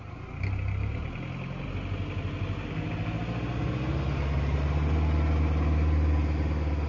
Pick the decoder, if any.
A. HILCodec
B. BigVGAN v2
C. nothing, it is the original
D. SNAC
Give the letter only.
C